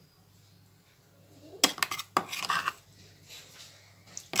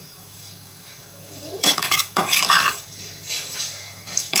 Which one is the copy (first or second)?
second